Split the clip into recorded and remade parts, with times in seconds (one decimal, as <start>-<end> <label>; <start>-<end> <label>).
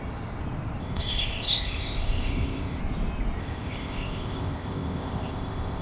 0.0-0.8 recorded; 0.8-2.8 remade; 2.8-3.4 recorded; 3.4-5.8 remade